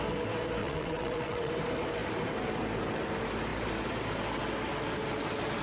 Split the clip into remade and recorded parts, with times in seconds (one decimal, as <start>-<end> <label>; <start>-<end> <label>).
0.0-0.6 recorded; 0.6-1.5 remade; 1.5-5.6 recorded